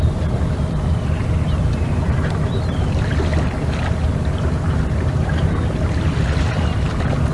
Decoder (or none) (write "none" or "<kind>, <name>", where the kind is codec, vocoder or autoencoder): vocoder, BigVGAN v2